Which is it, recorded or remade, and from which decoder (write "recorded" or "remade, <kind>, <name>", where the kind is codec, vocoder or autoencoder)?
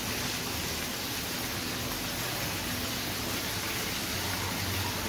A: recorded